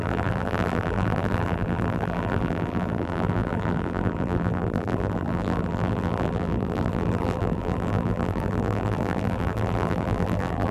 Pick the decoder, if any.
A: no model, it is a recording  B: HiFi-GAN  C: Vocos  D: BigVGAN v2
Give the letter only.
D